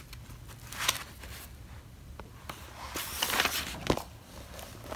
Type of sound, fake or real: real